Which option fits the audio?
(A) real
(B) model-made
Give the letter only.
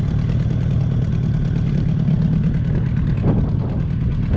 A